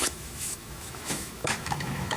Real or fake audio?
fake